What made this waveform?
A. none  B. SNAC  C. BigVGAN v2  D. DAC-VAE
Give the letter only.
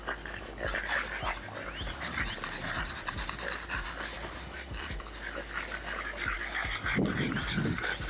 A